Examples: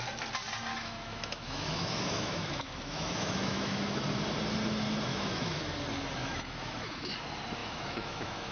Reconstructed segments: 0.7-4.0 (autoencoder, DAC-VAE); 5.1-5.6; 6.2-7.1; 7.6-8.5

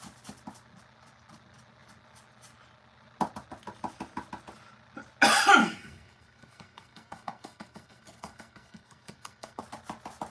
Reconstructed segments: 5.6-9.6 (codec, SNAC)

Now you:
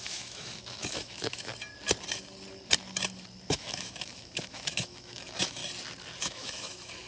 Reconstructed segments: 0.0-1.5 (autoencoder, DAC-VAE); 3.5-5.6; 6.2-7.1

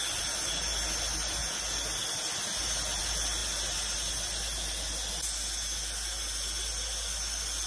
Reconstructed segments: none